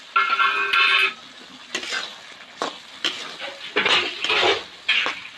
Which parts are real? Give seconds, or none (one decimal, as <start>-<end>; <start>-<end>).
0.0-5.4